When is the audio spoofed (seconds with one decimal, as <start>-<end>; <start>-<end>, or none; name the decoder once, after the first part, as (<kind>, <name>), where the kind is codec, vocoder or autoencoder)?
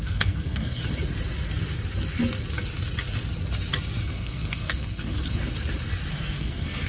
0.0-0.8 (codec, SNAC); 4.0-5.4; 6.1-6.9